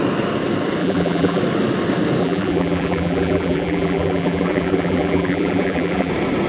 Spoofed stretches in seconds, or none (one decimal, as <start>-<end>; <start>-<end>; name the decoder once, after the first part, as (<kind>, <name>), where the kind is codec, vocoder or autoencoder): 0.8-1.4 (vocoder, BigVGAN v2); 2.2-6.1